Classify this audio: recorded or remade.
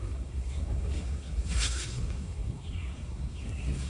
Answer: remade